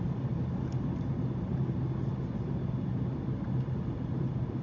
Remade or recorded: recorded